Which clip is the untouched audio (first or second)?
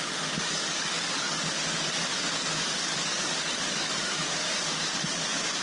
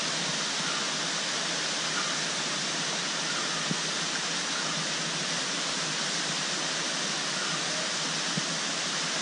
second